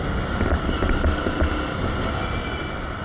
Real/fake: real